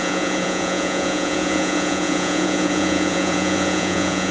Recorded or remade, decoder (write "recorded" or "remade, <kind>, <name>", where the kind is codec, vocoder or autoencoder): remade, vocoder, Vocos